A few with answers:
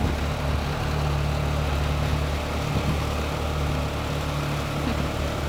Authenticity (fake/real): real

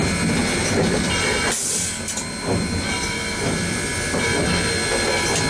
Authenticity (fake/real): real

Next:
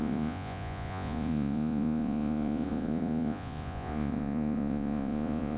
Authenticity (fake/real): fake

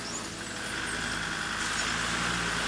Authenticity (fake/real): real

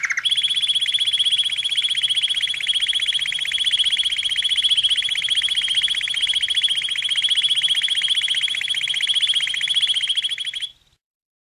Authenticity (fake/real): real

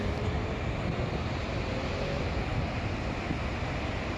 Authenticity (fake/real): real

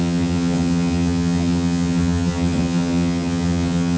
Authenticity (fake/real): fake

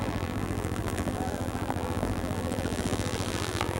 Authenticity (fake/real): fake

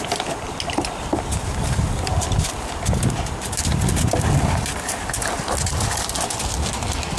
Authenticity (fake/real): real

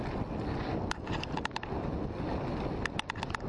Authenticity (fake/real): real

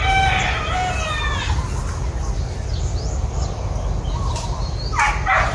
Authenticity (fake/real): real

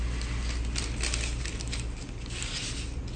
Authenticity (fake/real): real